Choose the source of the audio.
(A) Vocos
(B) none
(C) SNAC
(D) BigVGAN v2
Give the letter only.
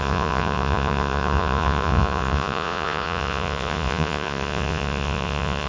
A